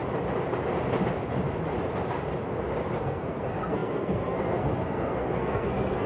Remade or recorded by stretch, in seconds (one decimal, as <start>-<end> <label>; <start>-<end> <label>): 0.0-3.0 recorded; 3.0-6.1 remade